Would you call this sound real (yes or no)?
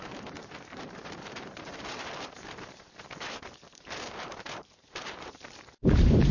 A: no